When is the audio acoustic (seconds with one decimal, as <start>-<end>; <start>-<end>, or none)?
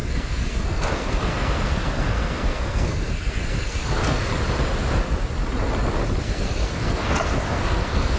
4.3-6.2